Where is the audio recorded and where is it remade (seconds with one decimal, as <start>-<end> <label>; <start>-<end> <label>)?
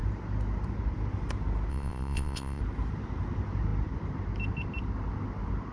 0.0-1.7 recorded; 1.7-2.6 remade; 2.6-5.7 recorded